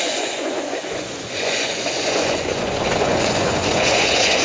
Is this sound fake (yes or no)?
yes